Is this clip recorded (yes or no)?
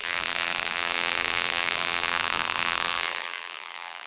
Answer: no